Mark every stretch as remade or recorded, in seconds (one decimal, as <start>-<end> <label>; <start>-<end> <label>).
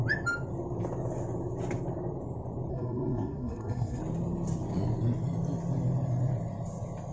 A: 0.0-2.7 recorded; 2.7-4.0 remade; 4.0-7.1 recorded